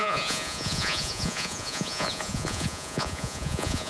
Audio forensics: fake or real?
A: fake